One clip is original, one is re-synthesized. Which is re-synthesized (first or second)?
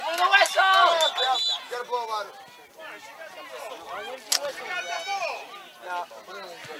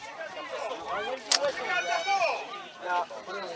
second